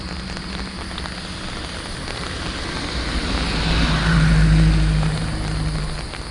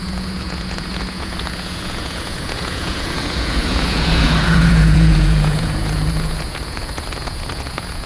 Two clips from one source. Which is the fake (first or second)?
second